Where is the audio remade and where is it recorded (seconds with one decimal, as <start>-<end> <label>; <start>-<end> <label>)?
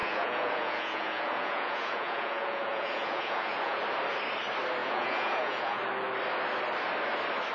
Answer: 0.0-3.8 remade; 3.8-4.8 recorded; 4.8-5.8 remade; 5.8-7.5 recorded